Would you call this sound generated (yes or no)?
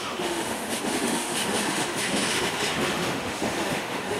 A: yes